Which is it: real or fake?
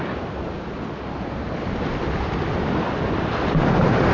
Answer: real